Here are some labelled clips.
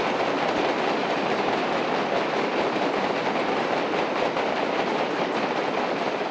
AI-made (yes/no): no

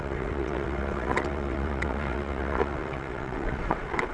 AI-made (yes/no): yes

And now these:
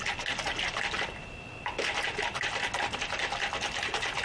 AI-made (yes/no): no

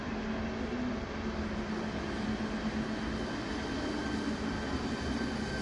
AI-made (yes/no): no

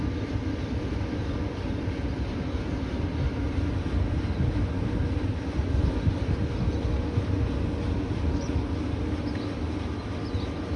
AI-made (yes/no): no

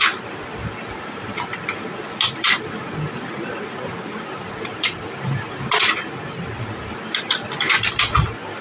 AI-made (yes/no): no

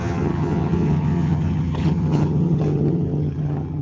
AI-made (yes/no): yes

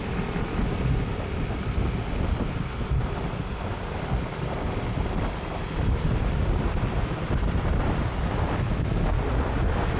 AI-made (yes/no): no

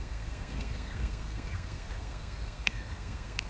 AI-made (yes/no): yes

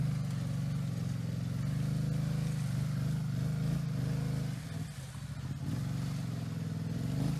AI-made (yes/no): no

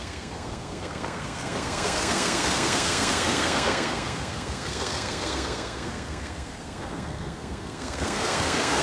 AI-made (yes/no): yes